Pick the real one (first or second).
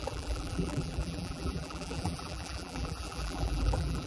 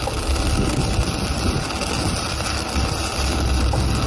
second